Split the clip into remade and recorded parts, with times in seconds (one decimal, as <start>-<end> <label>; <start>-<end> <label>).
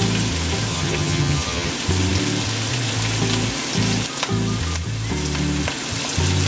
0.0-0.7 recorded; 0.7-1.7 remade; 1.7-6.5 recorded